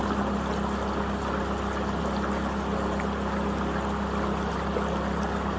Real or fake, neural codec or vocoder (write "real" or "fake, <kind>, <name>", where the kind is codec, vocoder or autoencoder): real